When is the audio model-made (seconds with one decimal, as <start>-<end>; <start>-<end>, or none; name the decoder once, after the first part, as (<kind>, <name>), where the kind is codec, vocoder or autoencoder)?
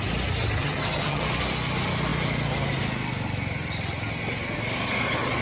0.6-1.2 (vocoder, HiFi-GAN)